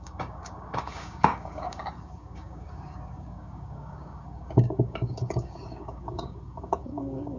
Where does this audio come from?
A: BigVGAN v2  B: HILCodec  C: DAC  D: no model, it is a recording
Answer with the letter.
C